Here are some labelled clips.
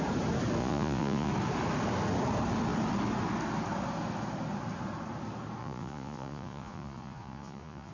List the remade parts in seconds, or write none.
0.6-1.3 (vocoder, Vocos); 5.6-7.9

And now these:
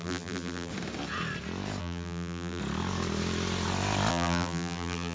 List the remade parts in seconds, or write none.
0.0-0.7 (vocoder, BigVGAN v2); 1.8-2.6; 4.1-5.1